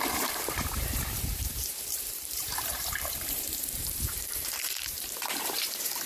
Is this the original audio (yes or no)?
no